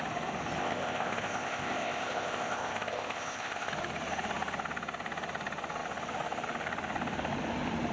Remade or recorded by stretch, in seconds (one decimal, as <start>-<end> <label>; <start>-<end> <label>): 0.0-0.6 recorded; 0.6-3.7 remade; 3.7-7.9 recorded